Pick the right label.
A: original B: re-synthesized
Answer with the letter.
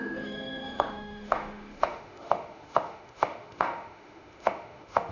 B